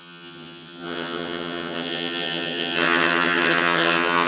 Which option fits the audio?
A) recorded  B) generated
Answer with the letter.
B